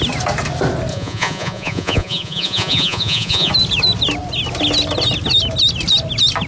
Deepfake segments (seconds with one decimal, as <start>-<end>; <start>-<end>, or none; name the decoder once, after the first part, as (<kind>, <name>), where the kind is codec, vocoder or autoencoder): 0.9-3.5 (vocoder, Vocos)